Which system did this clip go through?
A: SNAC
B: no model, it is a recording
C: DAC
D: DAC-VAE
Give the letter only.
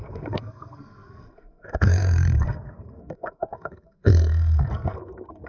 A